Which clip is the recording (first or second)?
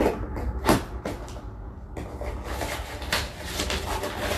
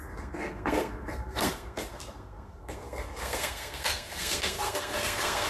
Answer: first